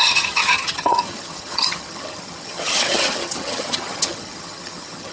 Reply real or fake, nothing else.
fake